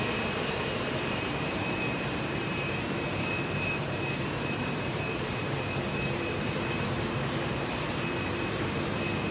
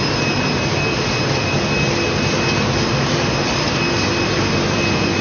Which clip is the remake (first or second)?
first